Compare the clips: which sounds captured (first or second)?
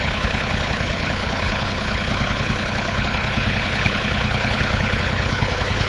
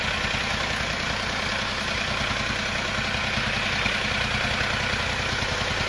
second